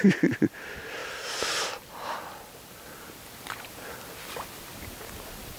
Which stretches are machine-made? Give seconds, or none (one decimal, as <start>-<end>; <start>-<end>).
1.0-1.9